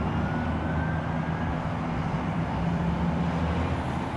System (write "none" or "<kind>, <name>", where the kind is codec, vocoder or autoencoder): none